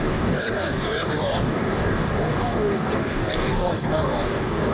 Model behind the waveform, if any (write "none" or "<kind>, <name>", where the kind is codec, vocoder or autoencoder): codec, DAC